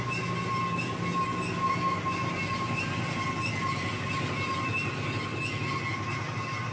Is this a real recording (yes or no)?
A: yes